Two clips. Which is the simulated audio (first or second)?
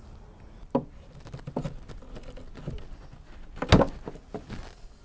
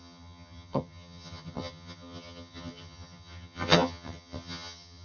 second